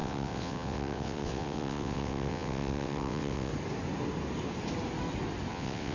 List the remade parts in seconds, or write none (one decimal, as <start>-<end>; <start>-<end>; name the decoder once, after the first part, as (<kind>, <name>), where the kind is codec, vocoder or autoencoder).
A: 0.0-3.5 (vocoder, WaveNeXt); 5.5-5.9